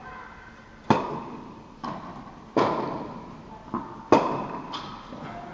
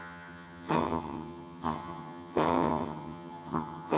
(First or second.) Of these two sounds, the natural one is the first